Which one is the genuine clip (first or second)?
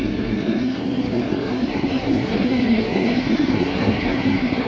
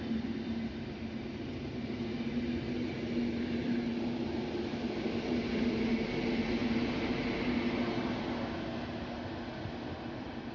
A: second